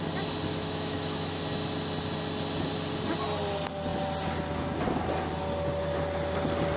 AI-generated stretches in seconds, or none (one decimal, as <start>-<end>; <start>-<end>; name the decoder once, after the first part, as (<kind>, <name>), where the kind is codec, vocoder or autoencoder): 0.5-1.4 (autoencoder, DAC-VAE)